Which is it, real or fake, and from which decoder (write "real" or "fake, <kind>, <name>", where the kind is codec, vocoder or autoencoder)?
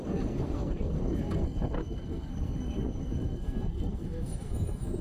fake, codec, SNAC